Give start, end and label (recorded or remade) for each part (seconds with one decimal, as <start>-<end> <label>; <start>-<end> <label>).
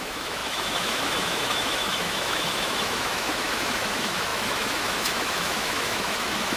0.0-6.6 remade